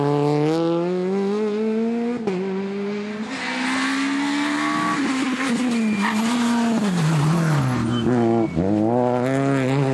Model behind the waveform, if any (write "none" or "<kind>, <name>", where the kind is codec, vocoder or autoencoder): none